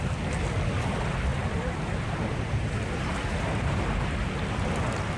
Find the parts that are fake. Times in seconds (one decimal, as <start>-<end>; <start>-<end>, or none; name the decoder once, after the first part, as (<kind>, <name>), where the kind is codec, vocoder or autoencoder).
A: 1.3-4.3 (vocoder, BigVGAN v2)